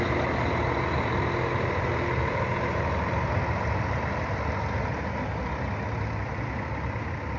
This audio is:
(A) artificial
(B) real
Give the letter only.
B